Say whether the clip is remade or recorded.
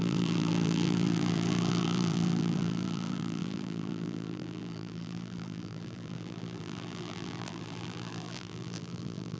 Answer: remade